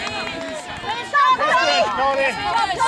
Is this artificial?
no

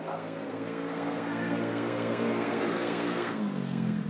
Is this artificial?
yes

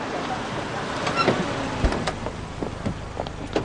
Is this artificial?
no